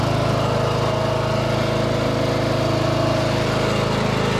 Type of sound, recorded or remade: recorded